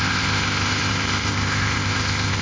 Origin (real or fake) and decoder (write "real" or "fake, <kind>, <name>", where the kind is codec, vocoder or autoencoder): fake, codec, ZipCodec